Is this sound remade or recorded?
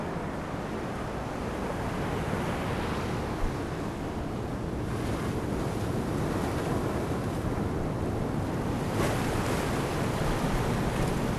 recorded